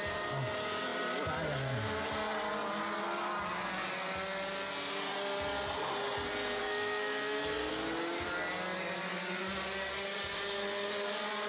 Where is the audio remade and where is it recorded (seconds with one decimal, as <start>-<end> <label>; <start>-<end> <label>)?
0.0-6.6 recorded; 6.6-7.7 remade; 7.7-11.5 recorded